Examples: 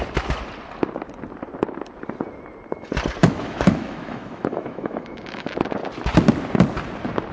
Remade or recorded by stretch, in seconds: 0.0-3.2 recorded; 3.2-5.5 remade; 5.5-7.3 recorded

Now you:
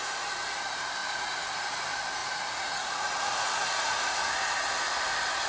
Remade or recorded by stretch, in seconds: 0.0-1.0 recorded; 1.0-1.5 remade; 1.5-2.2 recorded; 2.2-4.3 remade; 4.3-5.5 recorded

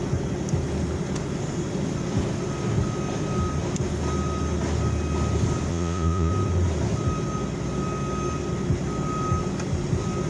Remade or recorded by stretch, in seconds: 0.0-5.7 recorded; 5.7-6.3 remade; 6.3-10.3 recorded

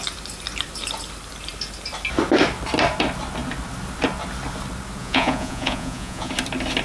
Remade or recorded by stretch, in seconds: 0.0-5.0 recorded; 5.0-6.3 remade; 6.3-6.8 recorded

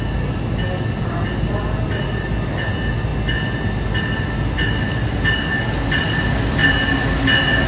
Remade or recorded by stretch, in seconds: 0.0-7.7 recorded

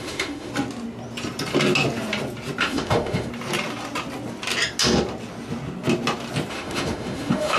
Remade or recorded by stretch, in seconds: 0.0-0.5 remade; 0.5-2.6 recorded; 2.6-3.3 remade; 3.3-6.5 recorded; 6.5-7.6 remade